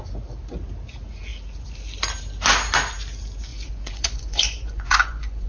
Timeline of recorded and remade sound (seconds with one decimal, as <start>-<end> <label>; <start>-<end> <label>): 0.0-3.5 recorded; 3.5-5.5 remade